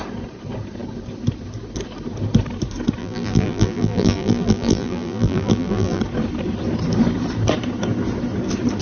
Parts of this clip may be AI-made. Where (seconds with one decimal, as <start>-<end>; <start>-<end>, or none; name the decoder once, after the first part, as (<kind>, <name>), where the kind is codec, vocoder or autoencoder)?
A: 3.0-6.0 (vocoder, BigVGAN v2)